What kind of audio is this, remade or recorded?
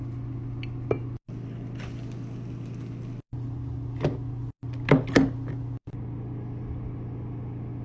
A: recorded